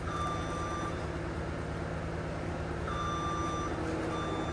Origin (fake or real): real